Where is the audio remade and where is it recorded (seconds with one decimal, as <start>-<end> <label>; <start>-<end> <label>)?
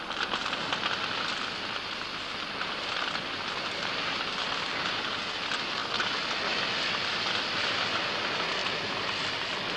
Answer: 0.0-9.8 recorded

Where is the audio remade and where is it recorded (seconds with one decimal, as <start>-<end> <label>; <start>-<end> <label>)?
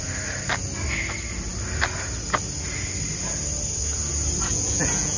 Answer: 0.0-4.5 recorded; 4.5-5.2 remade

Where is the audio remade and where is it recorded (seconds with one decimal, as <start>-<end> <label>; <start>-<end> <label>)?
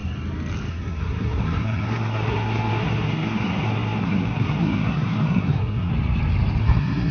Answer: 0.0-0.7 recorded; 0.7-5.9 remade; 5.9-6.6 recorded; 6.6-7.1 remade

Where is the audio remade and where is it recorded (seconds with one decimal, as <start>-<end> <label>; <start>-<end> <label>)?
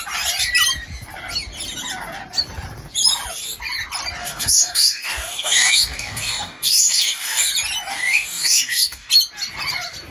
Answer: 0.0-4.2 recorded; 4.2-7.5 remade; 7.5-7.9 recorded; 7.9-9.1 remade; 9.1-10.1 recorded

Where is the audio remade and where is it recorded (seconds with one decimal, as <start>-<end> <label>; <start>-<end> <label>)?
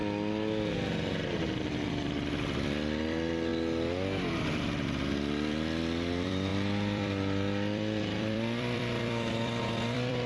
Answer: 0.0-1.9 recorded; 1.9-3.5 remade; 3.5-4.2 recorded; 4.2-10.3 remade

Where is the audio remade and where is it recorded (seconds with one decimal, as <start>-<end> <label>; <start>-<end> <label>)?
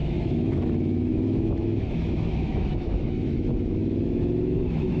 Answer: 0.0-5.0 remade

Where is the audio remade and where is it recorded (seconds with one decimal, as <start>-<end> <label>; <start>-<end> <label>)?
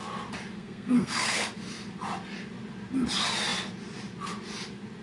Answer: 0.0-0.6 recorded; 0.6-1.5 remade; 1.5-5.0 recorded